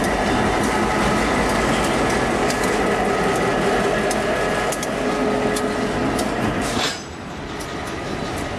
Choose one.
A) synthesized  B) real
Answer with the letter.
B